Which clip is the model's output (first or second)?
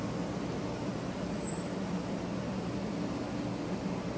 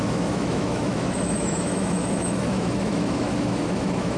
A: second